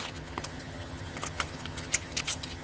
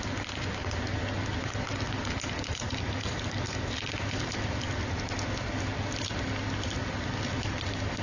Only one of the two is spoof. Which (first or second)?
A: first